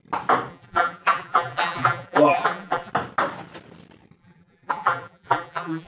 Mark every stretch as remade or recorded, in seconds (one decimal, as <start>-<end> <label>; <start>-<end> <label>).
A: 0.0-0.5 recorded; 0.5-2.9 remade; 2.9-4.2 recorded; 4.2-5.9 remade